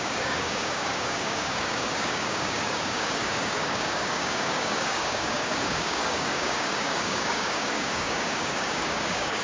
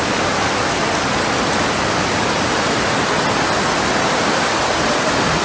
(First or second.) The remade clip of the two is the first